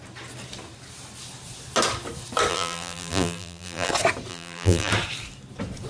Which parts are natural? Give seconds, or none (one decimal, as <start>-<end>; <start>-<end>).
0.0-2.5; 3.9-4.3; 4.9-5.9